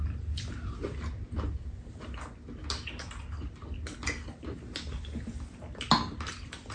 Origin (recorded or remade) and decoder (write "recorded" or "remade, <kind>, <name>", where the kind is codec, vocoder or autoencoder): recorded